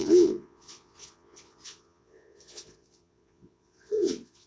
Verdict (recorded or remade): remade